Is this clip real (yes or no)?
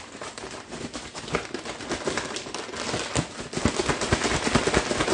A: yes